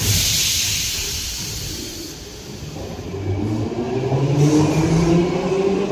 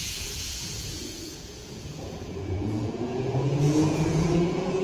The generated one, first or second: second